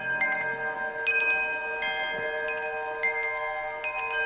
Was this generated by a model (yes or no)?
no